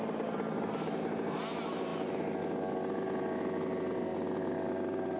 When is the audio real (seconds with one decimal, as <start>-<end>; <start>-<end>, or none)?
0.0-5.2